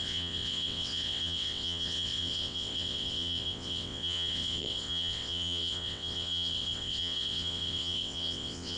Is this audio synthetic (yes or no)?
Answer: yes